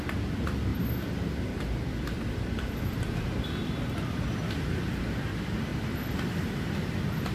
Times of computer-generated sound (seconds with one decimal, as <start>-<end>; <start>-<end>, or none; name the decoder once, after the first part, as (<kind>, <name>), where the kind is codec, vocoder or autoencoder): none